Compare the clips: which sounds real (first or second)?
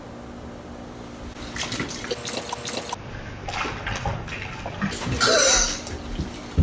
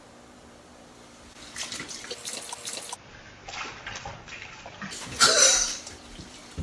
first